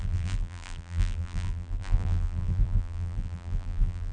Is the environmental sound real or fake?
fake